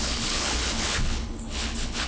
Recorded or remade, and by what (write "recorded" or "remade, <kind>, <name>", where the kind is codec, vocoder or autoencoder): remade, codec, HILCodec